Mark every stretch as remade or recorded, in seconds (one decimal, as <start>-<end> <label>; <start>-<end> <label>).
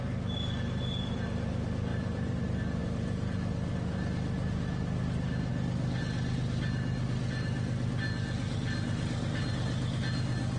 0.0-1.9 recorded; 1.9-2.4 remade; 2.4-10.6 recorded